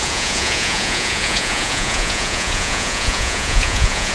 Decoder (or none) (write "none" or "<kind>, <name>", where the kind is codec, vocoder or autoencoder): vocoder, Vocos